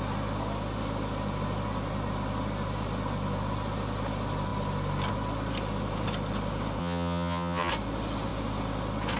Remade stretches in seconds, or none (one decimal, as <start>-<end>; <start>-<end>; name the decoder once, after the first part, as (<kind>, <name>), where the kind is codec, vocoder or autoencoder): 6.8-7.7 (vocoder, HiFi-GAN)